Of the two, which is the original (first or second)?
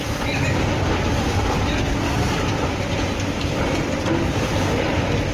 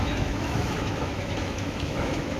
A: first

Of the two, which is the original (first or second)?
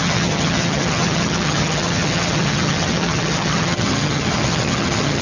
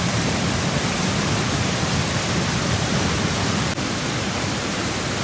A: second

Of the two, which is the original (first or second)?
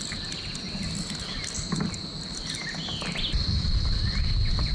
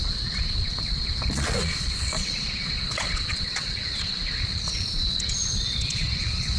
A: first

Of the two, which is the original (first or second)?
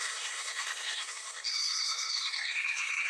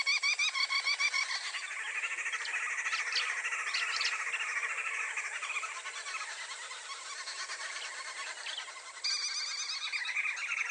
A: second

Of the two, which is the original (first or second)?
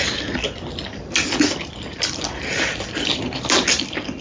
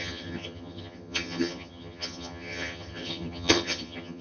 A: first